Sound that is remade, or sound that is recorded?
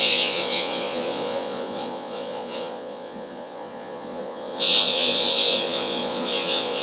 remade